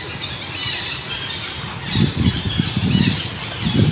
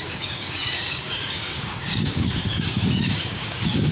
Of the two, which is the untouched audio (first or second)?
first